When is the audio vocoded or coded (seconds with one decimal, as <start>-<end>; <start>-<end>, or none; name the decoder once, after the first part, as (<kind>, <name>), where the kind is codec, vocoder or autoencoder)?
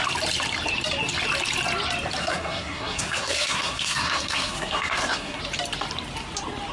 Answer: 2.2-5.4 (codec, SNAC)